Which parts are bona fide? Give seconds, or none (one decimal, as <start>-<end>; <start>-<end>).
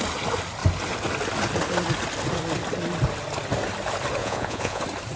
0.0-4.2; 4.8-5.2